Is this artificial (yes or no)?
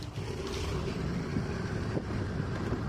yes